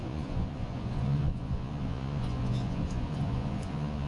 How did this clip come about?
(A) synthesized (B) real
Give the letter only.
A